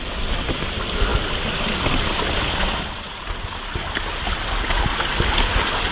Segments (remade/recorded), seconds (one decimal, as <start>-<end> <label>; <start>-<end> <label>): 0.0-5.9 recorded